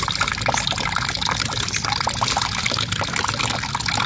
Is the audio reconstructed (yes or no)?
no